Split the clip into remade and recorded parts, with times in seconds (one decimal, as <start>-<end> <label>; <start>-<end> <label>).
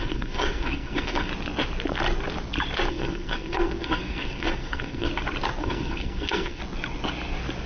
0.0-1.3 remade; 1.3-2.9 recorded; 2.9-5.1 remade; 5.1-5.6 recorded; 5.6-6.6 remade; 6.6-7.7 recorded